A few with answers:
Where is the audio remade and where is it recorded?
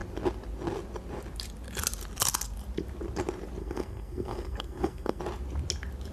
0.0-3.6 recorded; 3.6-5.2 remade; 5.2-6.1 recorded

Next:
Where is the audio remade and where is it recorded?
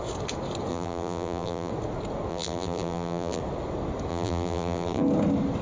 0.0-0.7 recorded; 0.7-1.7 remade; 1.7-2.3 recorded; 2.3-3.4 remade; 3.4-4.1 recorded; 4.1-5.0 remade; 5.0-5.6 recorded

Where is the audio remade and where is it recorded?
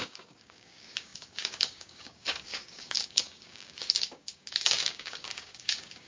0.0-6.1 remade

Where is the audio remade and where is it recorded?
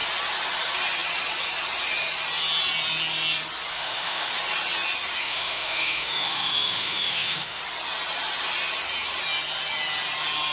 0.0-3.7 recorded; 3.7-4.3 remade; 4.3-5.2 recorded; 5.2-7.6 remade; 7.6-10.5 recorded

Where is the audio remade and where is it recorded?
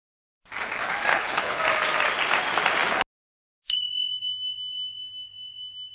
0.0-1.1 recorded; 1.1-1.6 remade; 1.6-5.9 recorded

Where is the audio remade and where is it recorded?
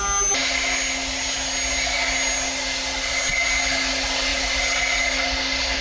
0.0-5.8 recorded